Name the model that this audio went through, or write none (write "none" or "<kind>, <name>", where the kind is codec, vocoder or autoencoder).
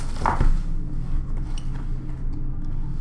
none